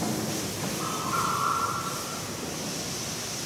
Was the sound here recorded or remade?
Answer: recorded